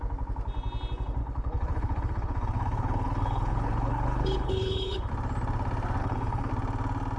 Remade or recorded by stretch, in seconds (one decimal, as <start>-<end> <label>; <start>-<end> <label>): 0.0-1.2 recorded; 1.2-5.1 remade; 5.1-6.0 recorded; 6.0-6.5 remade; 6.5-7.2 recorded